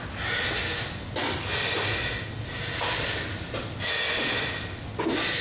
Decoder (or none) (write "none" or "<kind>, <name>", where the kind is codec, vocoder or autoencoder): none